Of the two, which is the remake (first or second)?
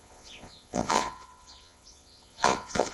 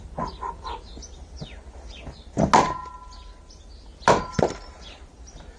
first